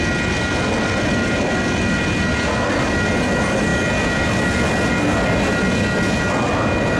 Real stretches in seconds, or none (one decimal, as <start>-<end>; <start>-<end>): 0.0-7.0